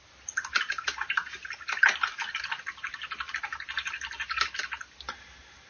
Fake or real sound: real